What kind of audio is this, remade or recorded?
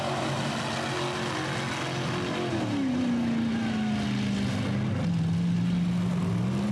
recorded